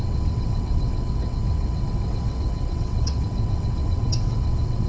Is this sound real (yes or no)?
no